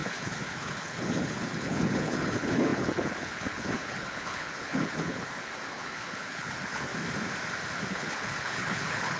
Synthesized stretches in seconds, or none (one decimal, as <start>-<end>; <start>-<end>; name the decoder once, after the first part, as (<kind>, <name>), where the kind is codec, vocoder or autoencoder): 0.0-6.9 (codec, HILCodec); 7.9-9.2